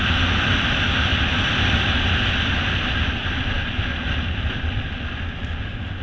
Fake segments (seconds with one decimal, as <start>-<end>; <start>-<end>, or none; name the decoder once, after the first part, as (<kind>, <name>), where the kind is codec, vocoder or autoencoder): none